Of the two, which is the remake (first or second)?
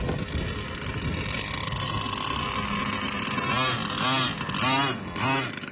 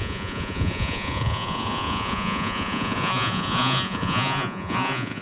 second